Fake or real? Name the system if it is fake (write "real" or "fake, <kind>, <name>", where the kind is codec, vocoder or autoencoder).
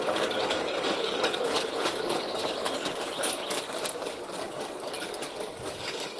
fake, codec, DAC